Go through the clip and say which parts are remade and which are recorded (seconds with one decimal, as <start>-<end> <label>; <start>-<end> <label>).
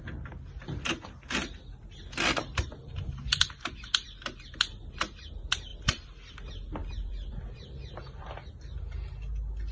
0.0-2.4 recorded; 2.4-3.4 remade; 3.4-5.7 recorded; 5.7-6.3 remade; 6.3-6.8 recorded; 6.8-8.8 remade; 8.8-9.7 recorded